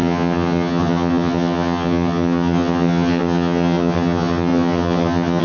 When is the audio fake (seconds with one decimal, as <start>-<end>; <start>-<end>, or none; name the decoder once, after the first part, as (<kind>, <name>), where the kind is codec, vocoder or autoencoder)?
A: 0.0-5.4 (vocoder, HiFi-GAN)